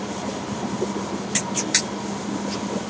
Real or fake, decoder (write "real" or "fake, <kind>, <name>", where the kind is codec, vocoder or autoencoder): real